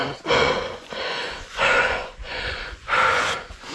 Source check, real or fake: fake